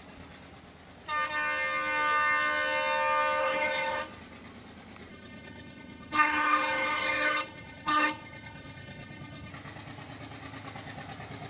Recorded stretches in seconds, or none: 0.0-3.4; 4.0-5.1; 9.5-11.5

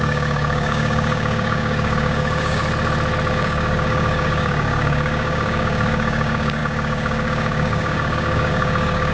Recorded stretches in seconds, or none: 2.6-3.3

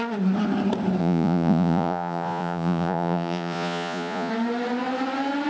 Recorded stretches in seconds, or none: 0.0-1.0; 4.3-5.5

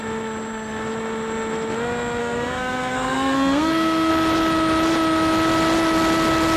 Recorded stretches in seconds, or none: 0.0-2.2; 4.1-6.6

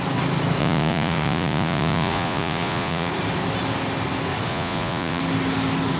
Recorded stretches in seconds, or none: 0.0-0.6; 3.1-4.5; 5.2-6.0

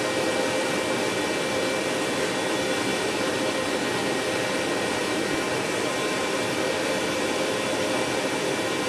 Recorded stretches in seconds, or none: 0.0-8.9